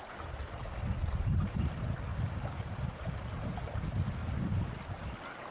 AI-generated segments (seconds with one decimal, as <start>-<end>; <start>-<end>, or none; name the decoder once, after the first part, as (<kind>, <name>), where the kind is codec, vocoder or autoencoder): 1.0-1.7 (vocoder, BigVGAN v2); 2.1-3.5; 4.2-4.7